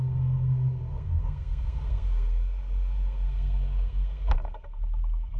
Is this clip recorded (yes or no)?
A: no